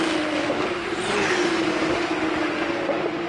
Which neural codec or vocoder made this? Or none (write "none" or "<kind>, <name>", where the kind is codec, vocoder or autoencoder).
none